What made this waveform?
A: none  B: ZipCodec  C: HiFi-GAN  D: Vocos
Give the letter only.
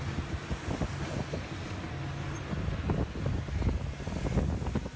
A